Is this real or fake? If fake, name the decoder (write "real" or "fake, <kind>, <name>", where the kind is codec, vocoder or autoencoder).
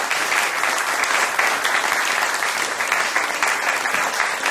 real